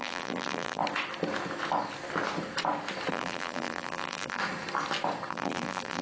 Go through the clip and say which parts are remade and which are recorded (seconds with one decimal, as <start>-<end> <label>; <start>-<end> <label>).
0.0-0.8 remade; 0.8-3.1 recorded; 3.1-4.4 remade; 4.4-5.3 recorded; 5.3-6.0 remade